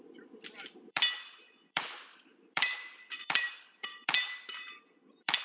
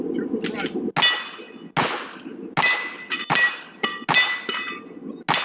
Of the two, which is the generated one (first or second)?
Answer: first